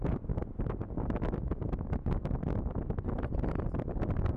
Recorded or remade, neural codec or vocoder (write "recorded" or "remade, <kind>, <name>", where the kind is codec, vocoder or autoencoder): recorded